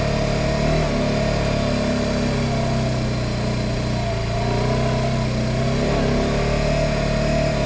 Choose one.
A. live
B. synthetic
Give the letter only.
A